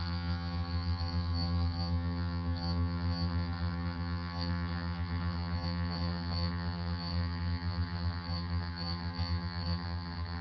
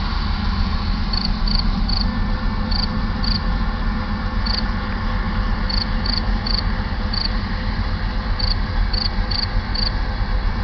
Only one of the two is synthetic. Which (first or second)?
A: first